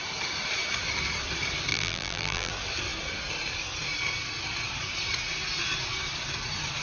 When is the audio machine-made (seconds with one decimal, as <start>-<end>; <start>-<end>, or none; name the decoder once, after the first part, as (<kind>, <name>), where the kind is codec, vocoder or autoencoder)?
1.7-2.5 (vocoder, BigVGAN v2)